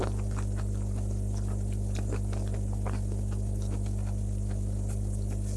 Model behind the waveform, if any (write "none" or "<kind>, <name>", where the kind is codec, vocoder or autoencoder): none